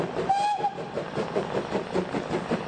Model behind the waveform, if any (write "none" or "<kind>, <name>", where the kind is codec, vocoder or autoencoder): none